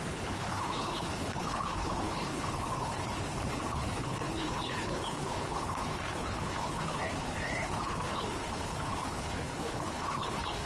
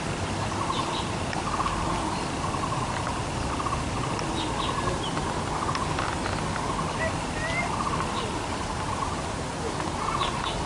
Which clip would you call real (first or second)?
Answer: second